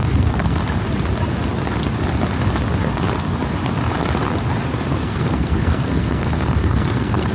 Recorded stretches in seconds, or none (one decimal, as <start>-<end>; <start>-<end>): 0.6-5.0